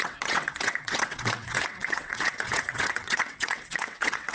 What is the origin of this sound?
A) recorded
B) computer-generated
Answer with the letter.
B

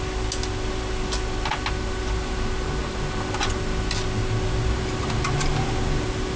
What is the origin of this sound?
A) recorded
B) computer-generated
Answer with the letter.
A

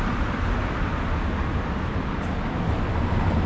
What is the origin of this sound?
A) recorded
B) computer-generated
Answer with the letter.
A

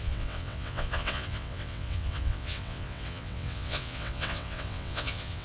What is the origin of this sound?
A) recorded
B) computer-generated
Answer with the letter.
B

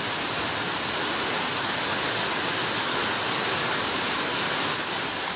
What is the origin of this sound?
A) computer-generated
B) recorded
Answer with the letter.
B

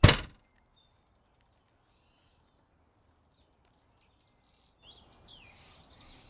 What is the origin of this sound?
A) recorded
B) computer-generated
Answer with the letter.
A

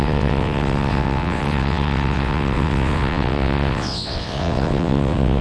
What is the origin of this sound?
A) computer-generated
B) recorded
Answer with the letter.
A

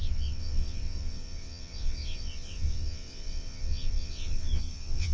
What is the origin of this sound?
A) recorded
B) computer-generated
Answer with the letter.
B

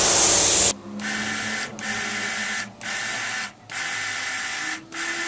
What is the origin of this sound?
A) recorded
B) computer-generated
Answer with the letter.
A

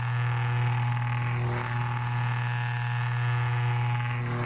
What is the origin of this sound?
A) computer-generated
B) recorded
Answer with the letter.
B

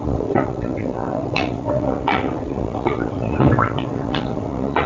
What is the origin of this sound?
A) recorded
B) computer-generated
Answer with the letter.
B